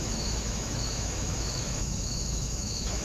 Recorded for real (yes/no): no